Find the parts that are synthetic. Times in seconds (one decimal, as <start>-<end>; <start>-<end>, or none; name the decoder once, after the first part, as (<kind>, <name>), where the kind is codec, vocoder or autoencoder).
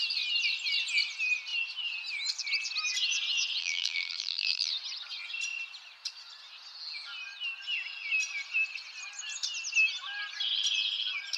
3.6-4.7 (vocoder, BigVGAN v2)